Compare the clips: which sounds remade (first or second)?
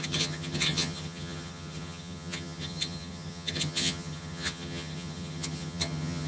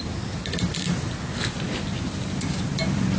first